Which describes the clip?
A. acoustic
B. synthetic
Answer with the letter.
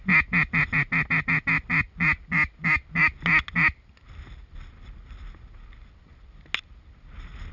A